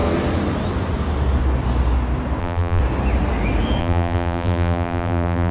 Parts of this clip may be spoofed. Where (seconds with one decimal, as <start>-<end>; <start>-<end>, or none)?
2.4-2.8; 3.8-5.5